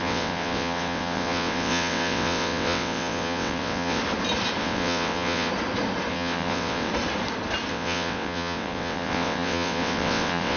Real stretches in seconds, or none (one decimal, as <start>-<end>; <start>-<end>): 4.0-4.6; 5.5-6.1; 6.9-7.7